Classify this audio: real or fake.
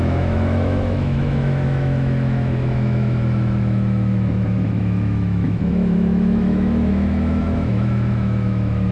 fake